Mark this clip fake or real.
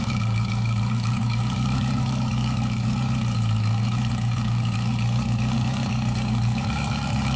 fake